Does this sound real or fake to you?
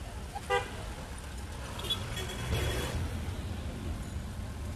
real